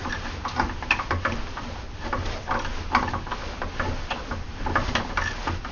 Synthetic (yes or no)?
no